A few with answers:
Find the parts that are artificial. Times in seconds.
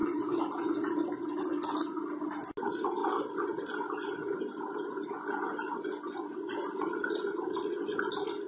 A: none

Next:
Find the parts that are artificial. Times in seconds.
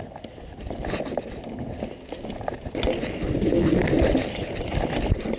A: none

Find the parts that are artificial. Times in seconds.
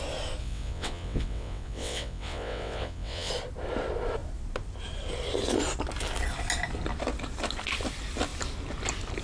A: 0.4-3.3 (vocoder, WaveNeXt)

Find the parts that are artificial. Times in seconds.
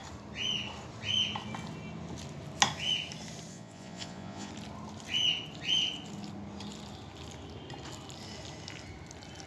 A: 3.5-4.5 (vocoder, Vocos)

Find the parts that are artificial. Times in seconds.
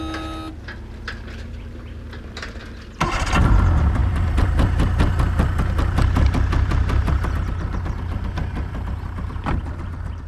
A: none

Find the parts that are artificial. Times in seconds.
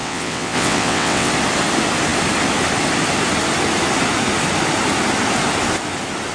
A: 0.0-1.3 (vocoder, WaveNeXt)